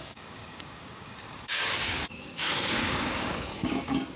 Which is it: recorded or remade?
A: remade